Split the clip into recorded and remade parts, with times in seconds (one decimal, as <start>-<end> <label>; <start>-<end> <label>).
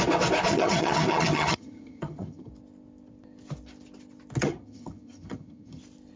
0.0-0.5 recorded; 0.5-2.5 remade; 2.5-4.4 recorded; 4.4-5.8 remade; 5.8-6.2 recorded